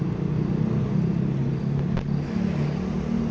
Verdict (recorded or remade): recorded